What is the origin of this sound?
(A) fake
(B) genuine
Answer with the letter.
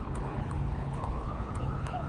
A